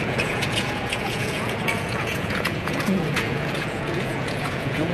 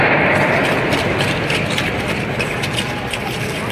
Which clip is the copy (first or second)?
first